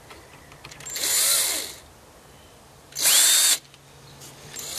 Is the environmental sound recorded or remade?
recorded